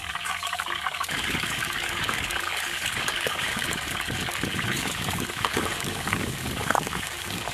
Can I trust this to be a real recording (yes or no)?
no